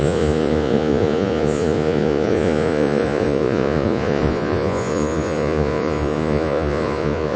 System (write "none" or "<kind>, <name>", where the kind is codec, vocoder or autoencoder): vocoder, Vocos